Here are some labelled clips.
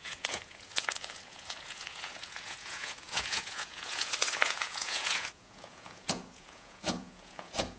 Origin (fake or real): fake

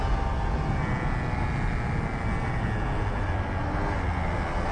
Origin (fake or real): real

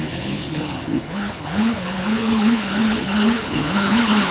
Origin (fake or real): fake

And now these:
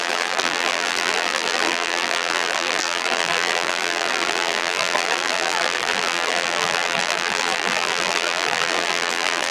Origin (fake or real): fake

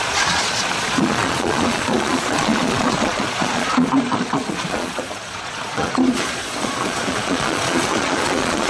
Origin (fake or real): fake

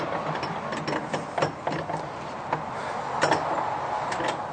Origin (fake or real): real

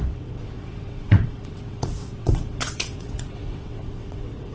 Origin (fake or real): fake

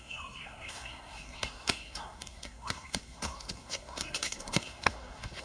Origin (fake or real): fake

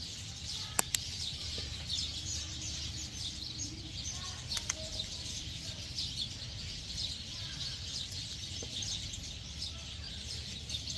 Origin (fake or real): real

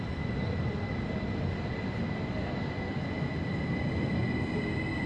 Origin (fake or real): real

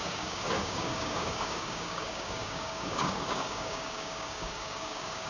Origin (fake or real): fake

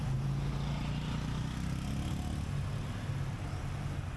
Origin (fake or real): real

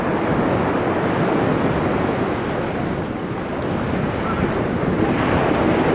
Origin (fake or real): real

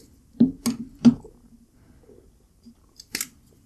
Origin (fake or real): real